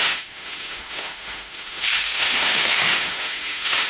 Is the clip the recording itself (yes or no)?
no